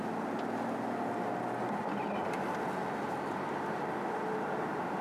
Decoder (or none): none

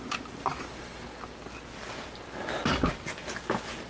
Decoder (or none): none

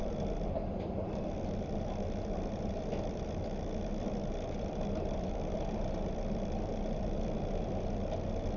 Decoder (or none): vocoder, BigVGAN v2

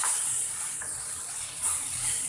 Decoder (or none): none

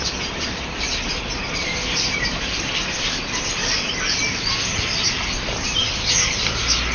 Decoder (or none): vocoder, BigVGAN v2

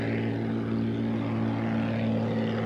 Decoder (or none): none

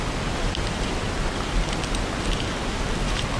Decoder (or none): none